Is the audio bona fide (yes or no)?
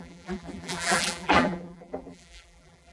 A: no